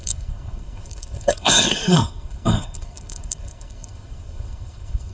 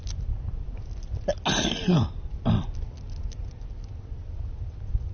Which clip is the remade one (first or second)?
first